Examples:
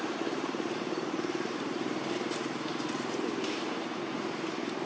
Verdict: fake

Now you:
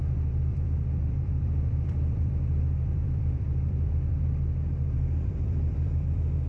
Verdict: fake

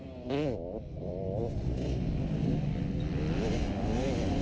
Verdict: real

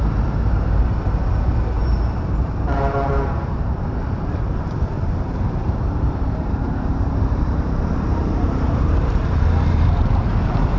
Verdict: fake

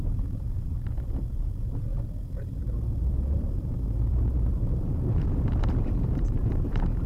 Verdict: fake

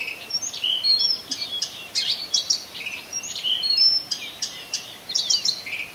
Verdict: fake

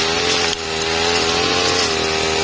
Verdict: real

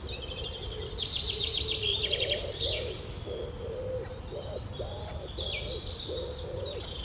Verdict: fake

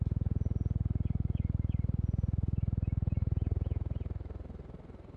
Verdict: real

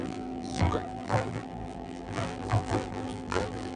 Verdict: fake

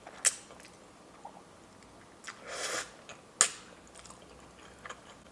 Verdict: real